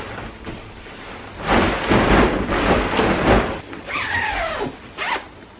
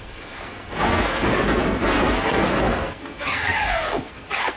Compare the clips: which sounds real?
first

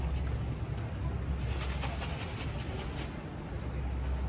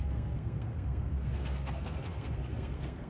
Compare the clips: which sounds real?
first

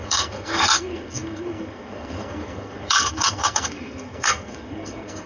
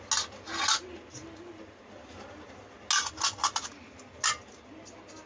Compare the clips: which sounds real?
second